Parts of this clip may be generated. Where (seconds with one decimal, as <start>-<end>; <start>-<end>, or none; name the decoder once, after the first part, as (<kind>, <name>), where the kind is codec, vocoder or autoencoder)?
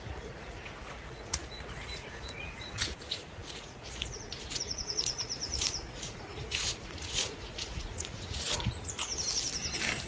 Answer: 0.0-9.1 (vocoder, Vocos)